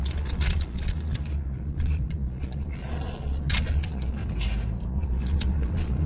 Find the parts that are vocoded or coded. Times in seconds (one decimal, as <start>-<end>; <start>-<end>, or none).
0.0-4.2; 4.9-6.1